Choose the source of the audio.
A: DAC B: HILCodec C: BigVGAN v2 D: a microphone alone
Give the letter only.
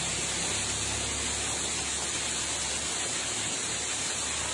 D